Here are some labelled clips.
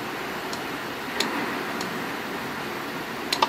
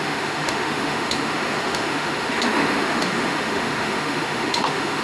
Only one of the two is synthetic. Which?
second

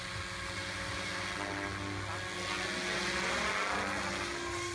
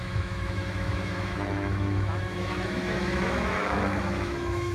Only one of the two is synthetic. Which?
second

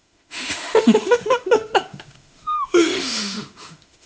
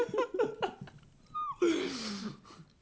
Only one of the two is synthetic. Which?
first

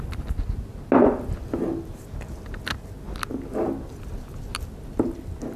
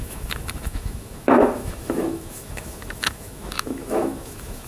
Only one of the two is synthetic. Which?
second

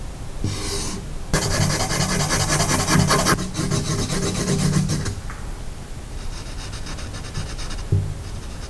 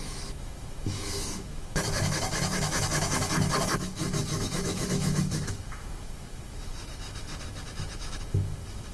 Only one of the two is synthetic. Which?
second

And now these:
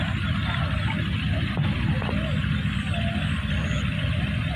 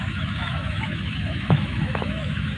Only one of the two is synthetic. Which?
second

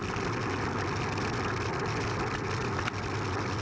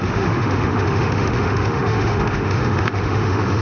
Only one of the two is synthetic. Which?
second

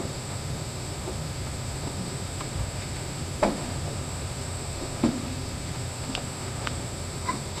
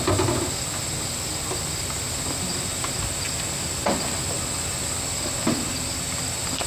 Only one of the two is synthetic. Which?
first